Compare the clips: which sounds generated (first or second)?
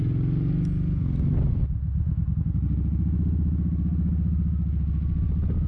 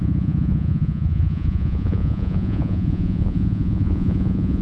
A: second